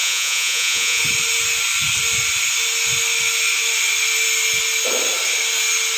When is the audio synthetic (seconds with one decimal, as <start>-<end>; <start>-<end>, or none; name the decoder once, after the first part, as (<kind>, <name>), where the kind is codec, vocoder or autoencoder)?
0.0-1.0 (vocoder, Vocos)